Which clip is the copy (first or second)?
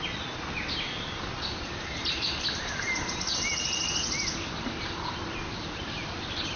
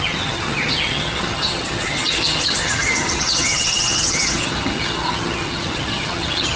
second